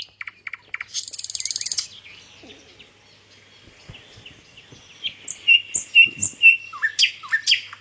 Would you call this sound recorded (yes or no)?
yes